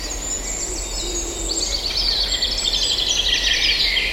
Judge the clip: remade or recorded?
recorded